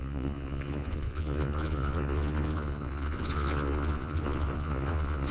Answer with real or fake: fake